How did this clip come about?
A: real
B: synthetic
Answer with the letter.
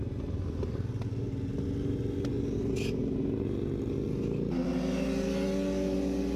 A